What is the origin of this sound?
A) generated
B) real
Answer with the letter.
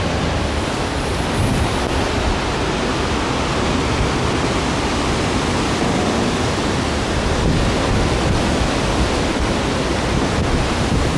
B